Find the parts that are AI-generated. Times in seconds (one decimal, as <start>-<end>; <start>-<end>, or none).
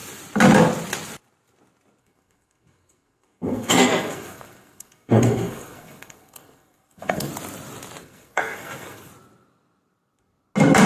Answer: 2.0-7.3; 8.0-9.1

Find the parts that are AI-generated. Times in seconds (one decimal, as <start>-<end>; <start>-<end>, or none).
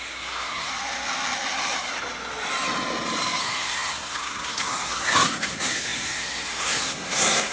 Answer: 0.0-0.7; 3.4-7.5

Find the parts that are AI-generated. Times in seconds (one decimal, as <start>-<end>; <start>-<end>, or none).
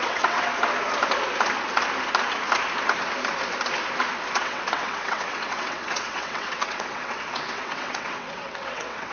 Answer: 0.0-0.5; 4.4-9.1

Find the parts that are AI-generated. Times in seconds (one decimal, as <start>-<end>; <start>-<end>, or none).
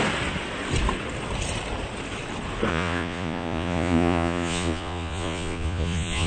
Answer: 2.7-6.3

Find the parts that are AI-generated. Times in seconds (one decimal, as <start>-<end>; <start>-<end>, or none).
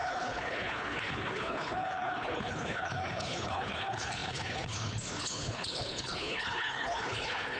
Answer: 0.0-7.6